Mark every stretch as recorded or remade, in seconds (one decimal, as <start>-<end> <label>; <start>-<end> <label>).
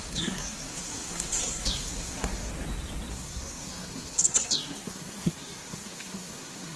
0.0-2.5 remade; 2.5-3.1 recorded; 3.1-6.8 remade